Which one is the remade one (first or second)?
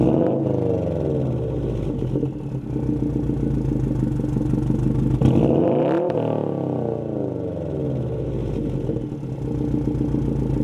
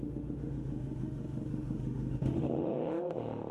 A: second